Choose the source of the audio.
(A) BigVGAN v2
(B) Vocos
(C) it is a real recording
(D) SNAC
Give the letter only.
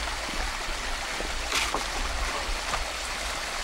C